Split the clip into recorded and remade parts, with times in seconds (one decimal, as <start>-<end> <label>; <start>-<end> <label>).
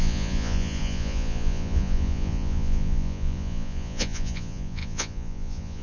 0.0-5.8 remade